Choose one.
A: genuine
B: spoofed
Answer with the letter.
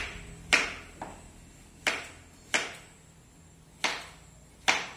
A